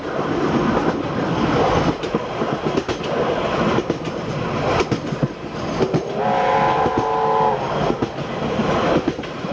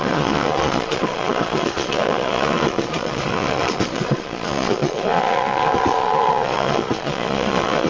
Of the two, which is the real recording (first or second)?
first